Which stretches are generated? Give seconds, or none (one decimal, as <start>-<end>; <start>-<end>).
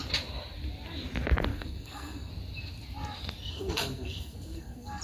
1.5-2.3; 3.5-5.0